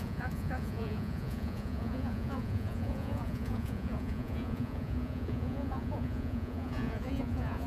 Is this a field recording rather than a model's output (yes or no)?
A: no